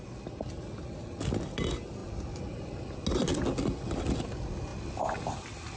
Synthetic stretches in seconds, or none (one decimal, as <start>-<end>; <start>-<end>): none